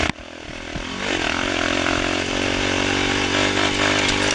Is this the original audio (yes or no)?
yes